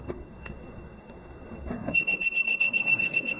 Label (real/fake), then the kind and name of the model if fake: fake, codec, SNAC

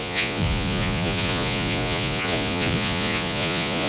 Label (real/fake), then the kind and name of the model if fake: fake, vocoder, Vocos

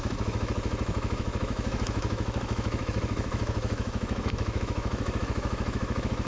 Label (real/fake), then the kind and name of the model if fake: fake, autoencoder, DAC-VAE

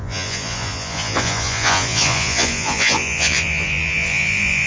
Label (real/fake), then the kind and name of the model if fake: fake, vocoder, Vocos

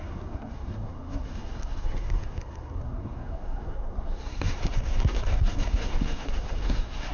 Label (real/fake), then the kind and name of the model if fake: fake, codec, SNAC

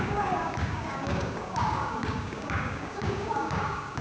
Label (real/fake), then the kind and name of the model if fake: fake, codec, DAC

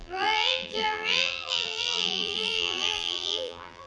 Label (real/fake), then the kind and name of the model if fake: fake, vocoder, BigVGAN v2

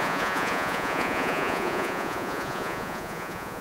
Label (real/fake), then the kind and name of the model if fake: fake, vocoder, Vocos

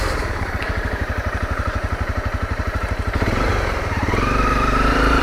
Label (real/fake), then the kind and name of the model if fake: fake, vocoder, BigVGAN v2